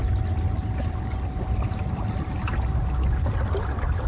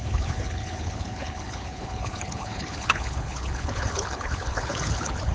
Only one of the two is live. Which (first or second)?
first